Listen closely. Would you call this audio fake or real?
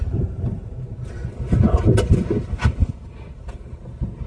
real